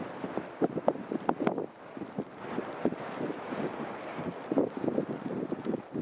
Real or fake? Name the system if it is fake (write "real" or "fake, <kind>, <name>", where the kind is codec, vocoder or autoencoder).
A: real